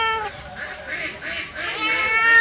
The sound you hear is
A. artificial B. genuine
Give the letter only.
B